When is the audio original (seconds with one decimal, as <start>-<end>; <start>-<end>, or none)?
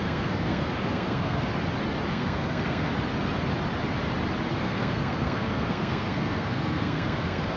1.5-2.1; 2.9-4.6